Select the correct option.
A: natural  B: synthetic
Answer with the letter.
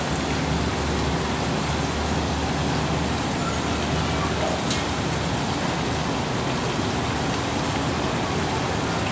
A